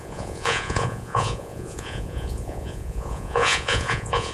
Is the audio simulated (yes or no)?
yes